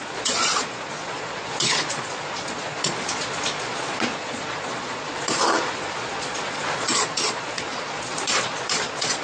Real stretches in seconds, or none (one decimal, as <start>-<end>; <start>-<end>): none